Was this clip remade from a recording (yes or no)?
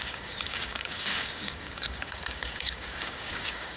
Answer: yes